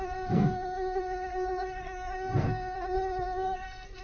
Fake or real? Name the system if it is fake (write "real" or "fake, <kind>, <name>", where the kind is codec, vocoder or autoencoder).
fake, codec, SNAC